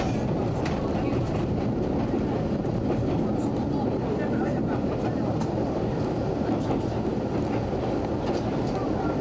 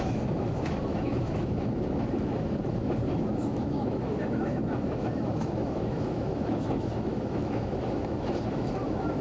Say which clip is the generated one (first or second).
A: second